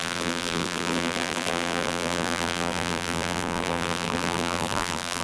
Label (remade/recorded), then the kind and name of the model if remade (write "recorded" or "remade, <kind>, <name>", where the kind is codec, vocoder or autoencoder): remade, vocoder, BigVGAN v2